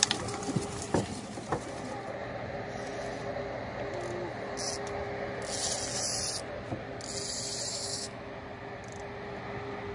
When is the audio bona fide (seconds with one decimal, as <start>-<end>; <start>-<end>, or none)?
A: 0.0-7.7; 8.3-9.9